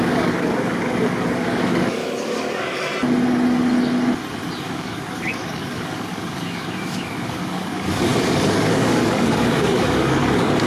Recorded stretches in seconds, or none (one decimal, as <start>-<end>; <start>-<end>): 2.9-4.6